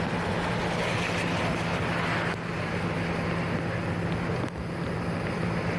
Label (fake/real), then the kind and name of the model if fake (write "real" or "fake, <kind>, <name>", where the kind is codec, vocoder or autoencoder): real